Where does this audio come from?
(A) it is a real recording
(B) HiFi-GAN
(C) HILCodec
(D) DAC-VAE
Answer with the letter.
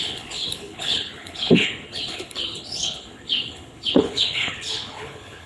C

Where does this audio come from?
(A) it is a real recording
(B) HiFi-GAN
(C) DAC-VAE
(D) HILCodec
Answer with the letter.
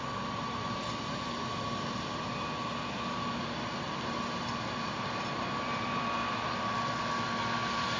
A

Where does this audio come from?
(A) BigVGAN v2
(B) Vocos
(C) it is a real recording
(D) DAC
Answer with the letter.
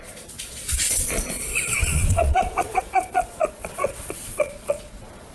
B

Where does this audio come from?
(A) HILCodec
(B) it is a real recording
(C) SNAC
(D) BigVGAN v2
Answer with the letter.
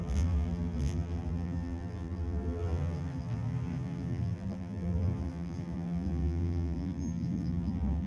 D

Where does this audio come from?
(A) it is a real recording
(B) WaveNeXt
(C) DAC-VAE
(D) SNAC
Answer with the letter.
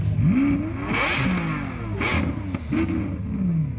A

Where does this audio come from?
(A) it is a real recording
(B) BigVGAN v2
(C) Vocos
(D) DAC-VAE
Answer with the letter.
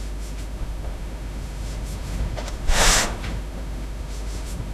D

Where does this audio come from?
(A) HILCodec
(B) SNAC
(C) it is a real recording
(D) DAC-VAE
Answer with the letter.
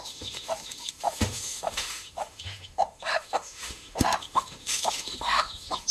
D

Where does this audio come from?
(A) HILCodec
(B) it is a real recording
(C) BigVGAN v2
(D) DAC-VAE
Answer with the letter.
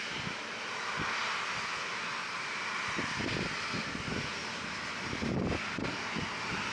B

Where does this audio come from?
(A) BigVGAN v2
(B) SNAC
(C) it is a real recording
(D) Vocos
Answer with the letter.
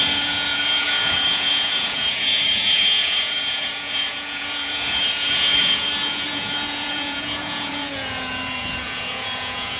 D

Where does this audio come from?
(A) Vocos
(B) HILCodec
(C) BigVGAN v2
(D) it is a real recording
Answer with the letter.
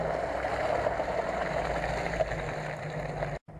D